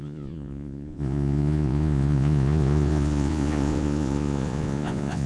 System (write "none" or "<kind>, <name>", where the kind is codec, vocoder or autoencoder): vocoder, Vocos